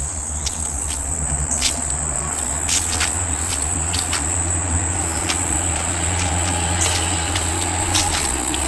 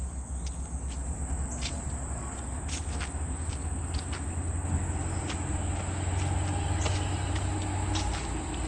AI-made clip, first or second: first